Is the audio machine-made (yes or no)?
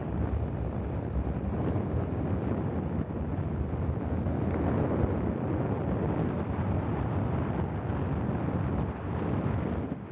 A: no